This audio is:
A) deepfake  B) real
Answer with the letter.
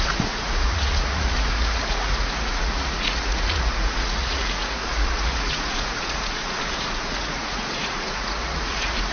A